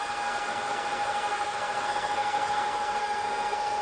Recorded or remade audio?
remade